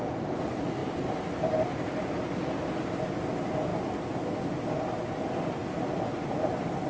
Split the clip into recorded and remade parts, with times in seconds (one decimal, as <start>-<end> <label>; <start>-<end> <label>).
0.0-6.9 recorded